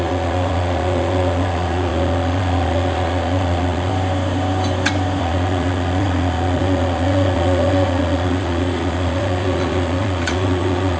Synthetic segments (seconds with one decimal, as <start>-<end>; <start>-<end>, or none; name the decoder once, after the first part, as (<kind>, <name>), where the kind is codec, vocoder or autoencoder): 0.0-3.9 (vocoder, Vocos); 5.2-11.0